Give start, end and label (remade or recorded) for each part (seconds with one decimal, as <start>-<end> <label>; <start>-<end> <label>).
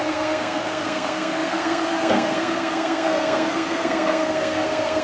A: 0.0-5.0 remade